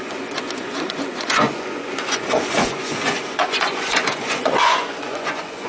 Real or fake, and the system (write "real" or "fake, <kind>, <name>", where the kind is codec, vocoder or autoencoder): fake, vocoder, Vocos